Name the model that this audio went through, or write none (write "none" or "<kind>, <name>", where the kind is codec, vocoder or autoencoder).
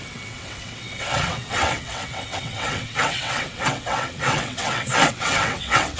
vocoder, WaveNeXt